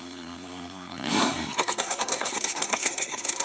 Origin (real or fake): fake